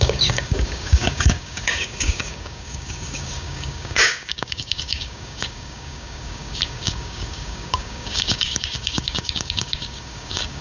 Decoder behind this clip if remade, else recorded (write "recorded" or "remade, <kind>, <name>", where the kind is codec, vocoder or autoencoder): remade, codec, DAC